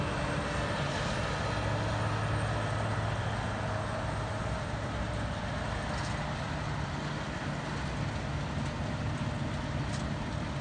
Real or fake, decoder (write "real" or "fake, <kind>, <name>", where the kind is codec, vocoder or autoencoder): real